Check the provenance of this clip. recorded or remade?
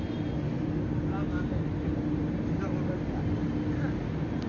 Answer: recorded